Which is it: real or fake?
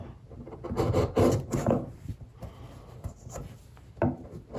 real